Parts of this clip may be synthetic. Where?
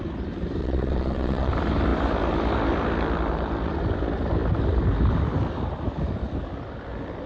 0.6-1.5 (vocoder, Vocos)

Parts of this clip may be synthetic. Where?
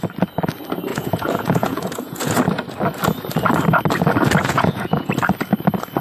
0.9-2.4 (vocoder, Vocos); 4.4-5.1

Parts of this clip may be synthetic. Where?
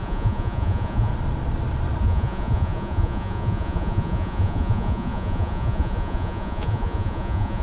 0.0-1.1 (vocoder, Vocos); 2.0-7.6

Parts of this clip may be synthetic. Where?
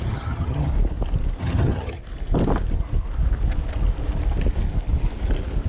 0.0-0.7 (vocoder, HiFi-GAN); 1.4-2.0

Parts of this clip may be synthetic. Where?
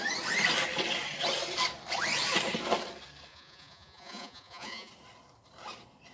3.3-4.9 (vocoder, Vocos)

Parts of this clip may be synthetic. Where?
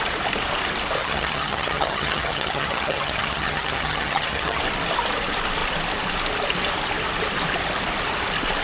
1.0-4.6 (vocoder, HiFi-GAN)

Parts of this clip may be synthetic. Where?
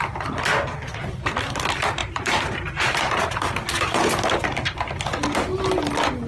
2.0-3.4 (vocoder, BigVGAN v2)